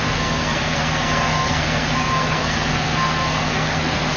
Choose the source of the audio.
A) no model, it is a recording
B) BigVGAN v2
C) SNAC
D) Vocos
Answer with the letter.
C